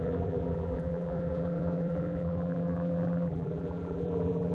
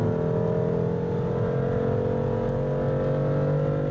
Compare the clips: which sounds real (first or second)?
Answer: second